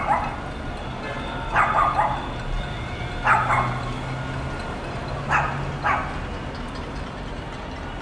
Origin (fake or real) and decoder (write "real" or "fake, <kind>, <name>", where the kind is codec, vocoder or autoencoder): real